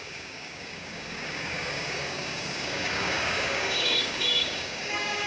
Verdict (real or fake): fake